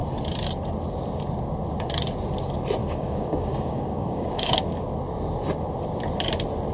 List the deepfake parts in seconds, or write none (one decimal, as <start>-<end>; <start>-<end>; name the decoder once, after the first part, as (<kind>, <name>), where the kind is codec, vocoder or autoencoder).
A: 2.8-4.6 (codec, DAC)